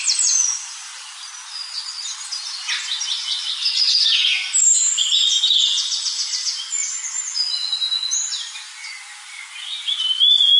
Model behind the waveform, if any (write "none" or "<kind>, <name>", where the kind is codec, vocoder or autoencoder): none